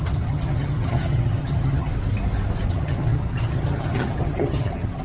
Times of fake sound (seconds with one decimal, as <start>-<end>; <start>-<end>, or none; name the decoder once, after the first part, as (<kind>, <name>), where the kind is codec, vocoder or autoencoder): 0.0-1.9 (vocoder, HiFi-GAN); 2.7-5.0